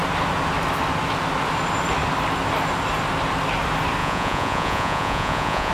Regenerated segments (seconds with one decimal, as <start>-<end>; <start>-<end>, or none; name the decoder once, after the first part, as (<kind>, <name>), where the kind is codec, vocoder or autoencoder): 4.0-5.7 (vocoder, Vocos)